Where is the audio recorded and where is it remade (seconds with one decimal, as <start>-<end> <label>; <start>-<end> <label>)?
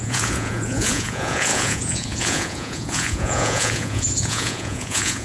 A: 0.0-5.2 remade